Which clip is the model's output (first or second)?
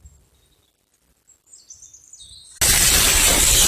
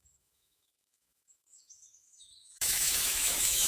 second